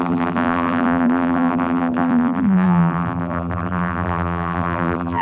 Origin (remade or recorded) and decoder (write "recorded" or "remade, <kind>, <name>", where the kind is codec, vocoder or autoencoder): remade, vocoder, BigVGAN v2